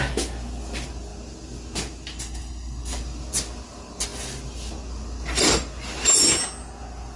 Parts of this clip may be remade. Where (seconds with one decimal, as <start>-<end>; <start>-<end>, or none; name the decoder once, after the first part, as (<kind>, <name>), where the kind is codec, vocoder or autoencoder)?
none